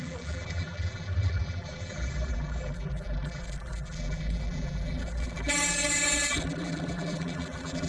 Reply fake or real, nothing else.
fake